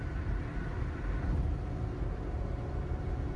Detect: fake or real real